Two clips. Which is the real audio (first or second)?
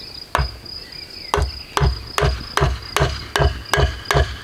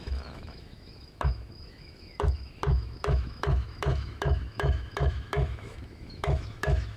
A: first